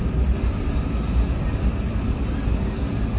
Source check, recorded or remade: recorded